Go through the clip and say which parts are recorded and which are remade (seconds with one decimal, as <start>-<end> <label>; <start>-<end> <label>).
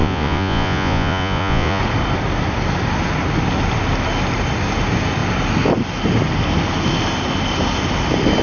0.0-1.8 remade; 1.8-8.4 recorded